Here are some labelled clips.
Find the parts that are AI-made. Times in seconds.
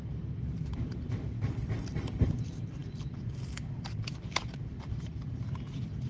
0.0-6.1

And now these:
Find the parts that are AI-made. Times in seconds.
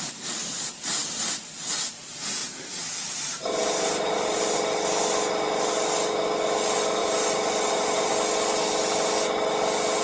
2.4-4.4; 7.0-8.1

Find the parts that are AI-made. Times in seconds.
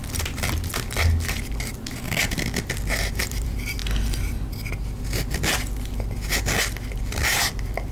3.2-3.8; 7.5-7.9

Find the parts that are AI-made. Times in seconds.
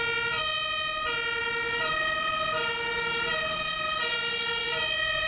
1.4-4.6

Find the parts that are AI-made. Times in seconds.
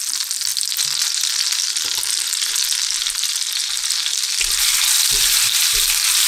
0.0-0.5; 1.4-6.3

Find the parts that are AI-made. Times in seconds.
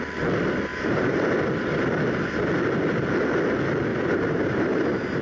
0.7-1.5; 3.9-4.8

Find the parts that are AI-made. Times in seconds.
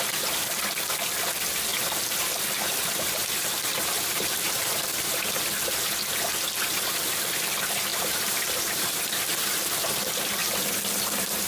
1.7-5.5; 7.9-9.9; 10.4-11.5